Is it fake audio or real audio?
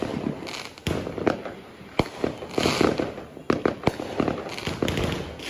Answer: real